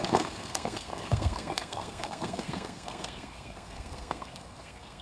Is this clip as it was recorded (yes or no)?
no